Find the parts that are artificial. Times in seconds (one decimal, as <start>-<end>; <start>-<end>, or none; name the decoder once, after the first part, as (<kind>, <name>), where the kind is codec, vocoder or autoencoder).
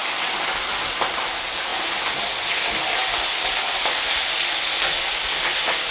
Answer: none